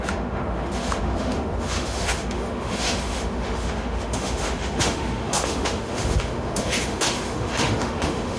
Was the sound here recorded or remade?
remade